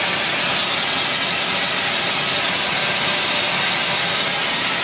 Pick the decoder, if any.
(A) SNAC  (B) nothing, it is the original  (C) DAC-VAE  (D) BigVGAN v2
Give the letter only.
B